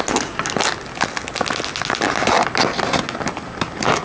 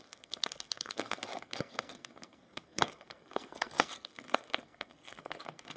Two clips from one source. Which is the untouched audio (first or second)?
first